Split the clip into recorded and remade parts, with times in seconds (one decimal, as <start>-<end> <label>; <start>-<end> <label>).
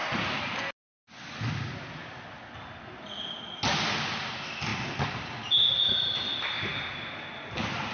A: 0.0-7.9 recorded